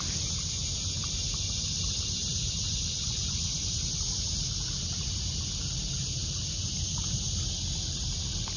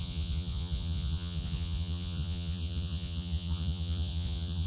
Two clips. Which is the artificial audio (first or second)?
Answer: second